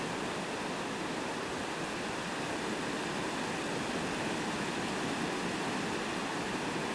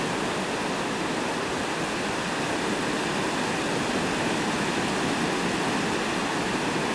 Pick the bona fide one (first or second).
second